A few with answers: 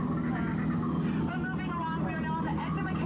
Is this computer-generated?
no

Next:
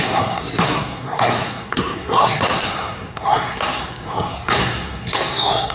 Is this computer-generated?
yes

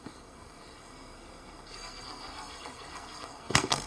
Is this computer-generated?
yes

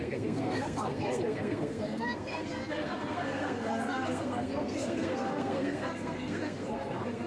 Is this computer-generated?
yes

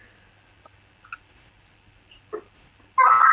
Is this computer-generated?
no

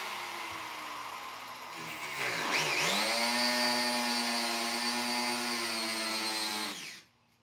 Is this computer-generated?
no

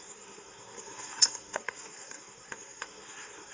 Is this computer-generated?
yes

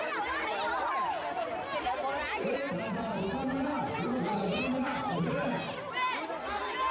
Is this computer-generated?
no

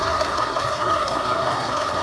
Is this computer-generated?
yes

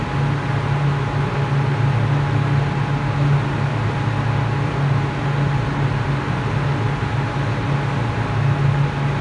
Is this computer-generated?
no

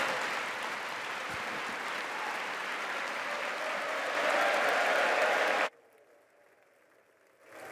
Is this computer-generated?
no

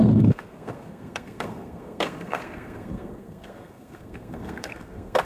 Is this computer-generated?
yes